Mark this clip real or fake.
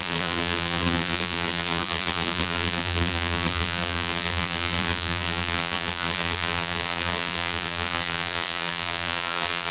fake